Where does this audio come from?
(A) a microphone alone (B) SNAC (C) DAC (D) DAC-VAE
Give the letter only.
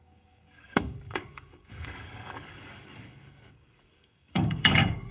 C